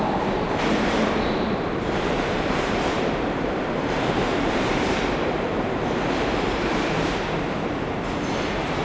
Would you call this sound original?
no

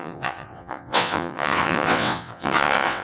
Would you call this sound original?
no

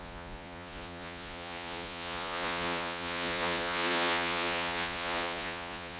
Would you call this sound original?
no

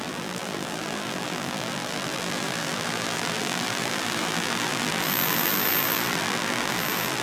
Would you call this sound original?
no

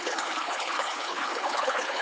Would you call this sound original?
no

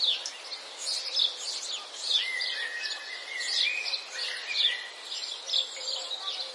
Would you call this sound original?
yes